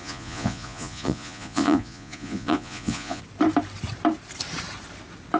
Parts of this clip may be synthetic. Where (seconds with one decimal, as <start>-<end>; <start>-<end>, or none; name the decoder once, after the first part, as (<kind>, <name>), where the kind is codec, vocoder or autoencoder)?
0.0-3.2 (vocoder, Vocos)